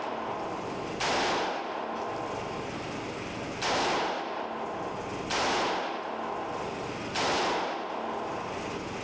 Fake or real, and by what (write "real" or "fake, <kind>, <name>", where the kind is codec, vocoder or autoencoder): real